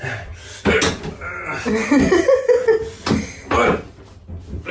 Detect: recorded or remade recorded